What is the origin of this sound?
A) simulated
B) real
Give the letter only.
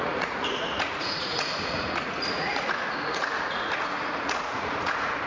A